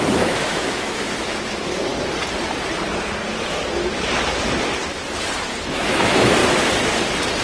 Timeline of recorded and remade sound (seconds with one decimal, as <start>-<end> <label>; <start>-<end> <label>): 0.0-1.9 remade; 1.9-5.7 recorded; 5.7-6.4 remade; 6.4-7.4 recorded